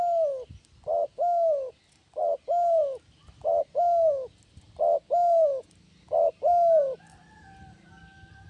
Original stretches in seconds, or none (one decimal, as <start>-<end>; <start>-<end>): 0.0-8.5